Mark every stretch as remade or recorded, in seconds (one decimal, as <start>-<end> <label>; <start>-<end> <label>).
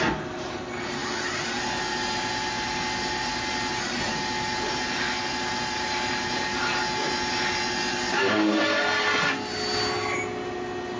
0.0-8.1 recorded; 8.1-8.6 remade; 8.6-11.0 recorded